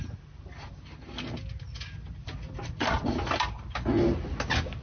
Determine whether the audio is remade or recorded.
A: recorded